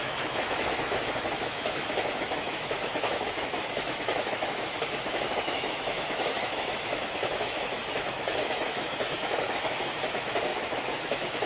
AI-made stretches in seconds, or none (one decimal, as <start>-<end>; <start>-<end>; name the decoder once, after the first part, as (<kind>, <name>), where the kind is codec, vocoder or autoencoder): 0.0-11.5 (autoencoder, DAC-VAE)